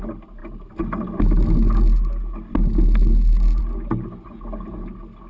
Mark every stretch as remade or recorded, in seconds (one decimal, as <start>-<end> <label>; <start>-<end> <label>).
0.0-5.3 recorded